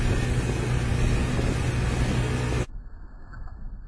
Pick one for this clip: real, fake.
real